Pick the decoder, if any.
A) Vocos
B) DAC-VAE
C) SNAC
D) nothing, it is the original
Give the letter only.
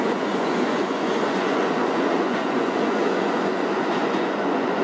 A